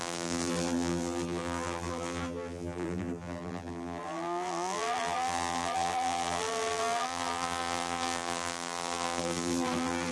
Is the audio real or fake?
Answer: fake